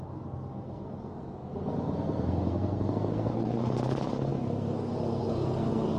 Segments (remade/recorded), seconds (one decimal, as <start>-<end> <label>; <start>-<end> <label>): 0.0-6.0 remade